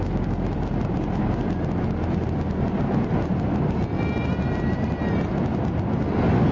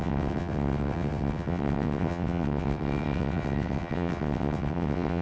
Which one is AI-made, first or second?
second